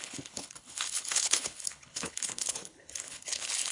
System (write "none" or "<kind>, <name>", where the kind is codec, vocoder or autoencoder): codec, HILCodec